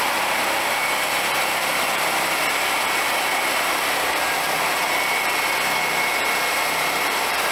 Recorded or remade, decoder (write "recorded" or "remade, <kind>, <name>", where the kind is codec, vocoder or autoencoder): remade, vocoder, BigVGAN v2